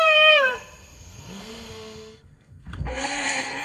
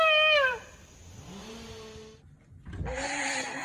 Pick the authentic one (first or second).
second